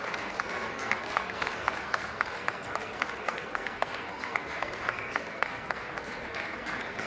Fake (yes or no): yes